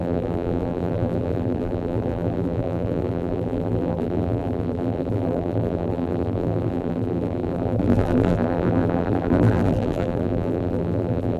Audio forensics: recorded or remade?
remade